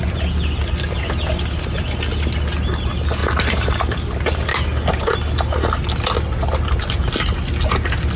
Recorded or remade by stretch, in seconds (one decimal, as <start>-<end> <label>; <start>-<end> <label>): 0.0-3.2 recorded; 3.2-3.8 remade; 3.8-8.2 recorded